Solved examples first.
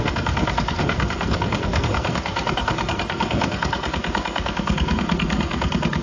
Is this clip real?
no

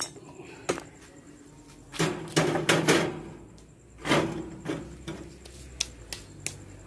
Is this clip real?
yes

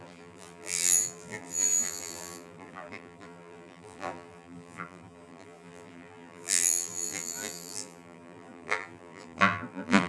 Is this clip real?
no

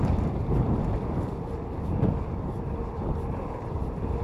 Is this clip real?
yes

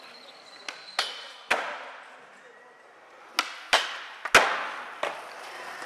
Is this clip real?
yes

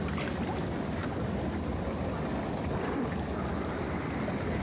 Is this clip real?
yes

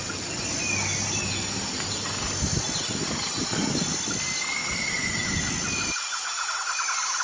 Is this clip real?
yes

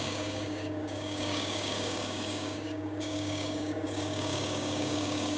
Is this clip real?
no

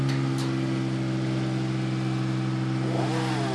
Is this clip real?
yes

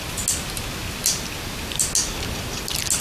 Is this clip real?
yes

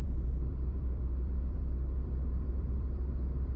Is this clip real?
no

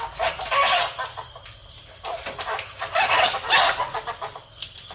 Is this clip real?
no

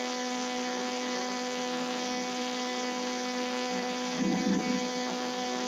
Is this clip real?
no